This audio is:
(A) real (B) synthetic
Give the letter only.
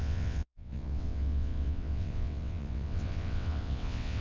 B